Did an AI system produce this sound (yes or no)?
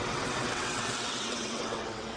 yes